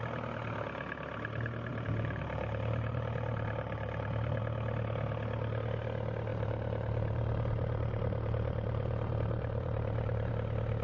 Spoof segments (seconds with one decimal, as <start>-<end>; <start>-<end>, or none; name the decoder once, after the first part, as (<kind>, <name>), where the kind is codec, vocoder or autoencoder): 1.7-4.4 (vocoder, BigVGAN v2); 6.3-10.3